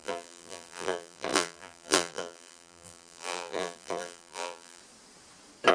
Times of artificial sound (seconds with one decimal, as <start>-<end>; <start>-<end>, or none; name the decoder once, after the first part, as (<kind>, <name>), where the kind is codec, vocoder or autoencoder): 0.0-4.8 (vocoder, BigVGAN v2)